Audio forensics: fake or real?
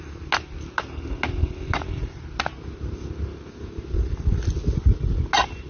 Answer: real